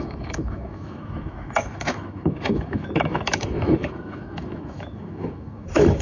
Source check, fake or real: fake